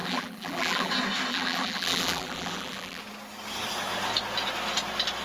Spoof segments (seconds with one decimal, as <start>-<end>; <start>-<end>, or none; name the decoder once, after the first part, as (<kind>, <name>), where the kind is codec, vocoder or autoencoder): 0.0-0.9 (vocoder, BigVGAN v2); 1.3-3.0